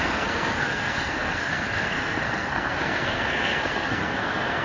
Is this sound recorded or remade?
remade